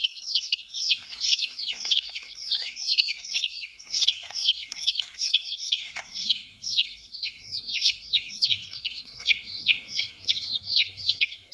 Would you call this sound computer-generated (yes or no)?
yes